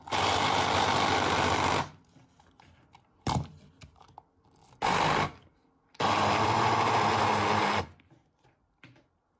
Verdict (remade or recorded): recorded